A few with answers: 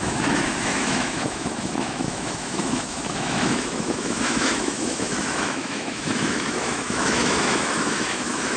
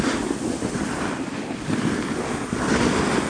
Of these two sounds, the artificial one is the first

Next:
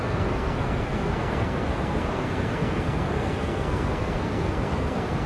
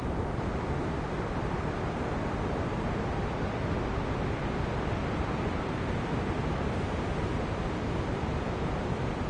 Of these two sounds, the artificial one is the first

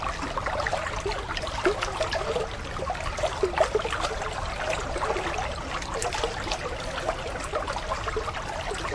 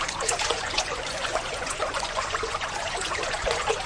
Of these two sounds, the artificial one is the second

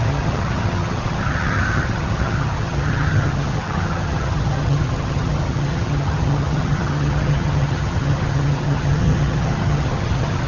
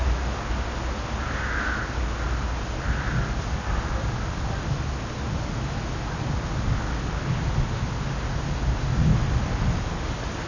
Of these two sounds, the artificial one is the first